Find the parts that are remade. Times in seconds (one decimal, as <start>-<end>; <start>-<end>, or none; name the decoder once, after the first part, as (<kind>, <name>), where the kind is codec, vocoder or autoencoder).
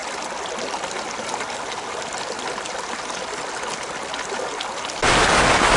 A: none